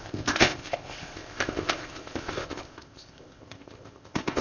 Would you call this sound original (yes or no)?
no